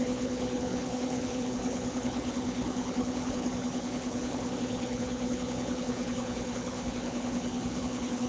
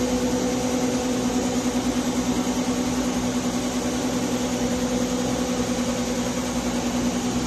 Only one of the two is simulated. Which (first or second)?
first